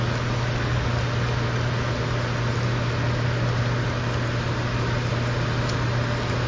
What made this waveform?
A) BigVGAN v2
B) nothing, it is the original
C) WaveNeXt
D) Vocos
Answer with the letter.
B